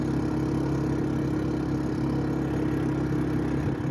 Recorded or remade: recorded